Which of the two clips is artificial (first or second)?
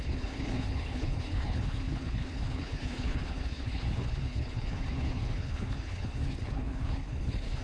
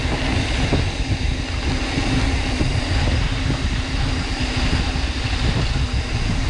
first